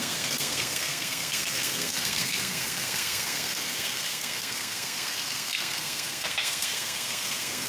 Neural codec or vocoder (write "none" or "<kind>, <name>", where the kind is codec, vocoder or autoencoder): codec, SNAC